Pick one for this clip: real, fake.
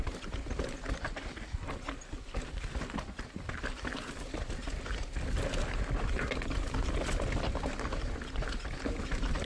real